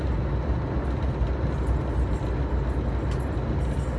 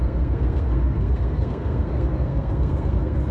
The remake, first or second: second